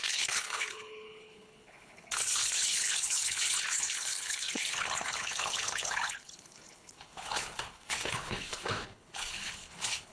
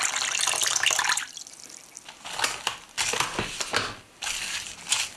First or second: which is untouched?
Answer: second